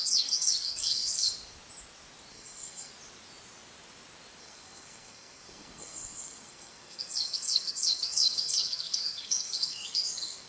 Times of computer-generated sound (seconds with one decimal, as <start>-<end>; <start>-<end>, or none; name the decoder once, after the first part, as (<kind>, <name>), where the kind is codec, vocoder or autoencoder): 0.0-1.3 (codec, SNAC); 2.3-2.9; 4.4-10.5